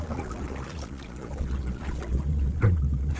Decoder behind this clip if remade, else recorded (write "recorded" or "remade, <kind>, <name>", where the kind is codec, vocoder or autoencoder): remade, vocoder, Vocos